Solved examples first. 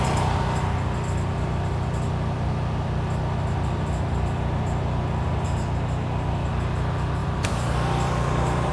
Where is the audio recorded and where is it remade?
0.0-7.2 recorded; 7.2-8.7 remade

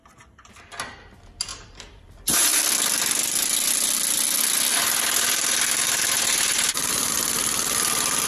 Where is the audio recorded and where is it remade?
0.0-1.5 recorded; 1.5-2.6 remade; 2.6-4.7 recorded; 4.7-7.1 remade; 7.1-8.3 recorded

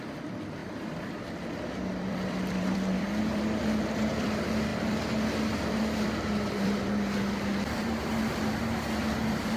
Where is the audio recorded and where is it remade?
0.0-9.6 remade